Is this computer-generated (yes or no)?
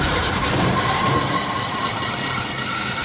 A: yes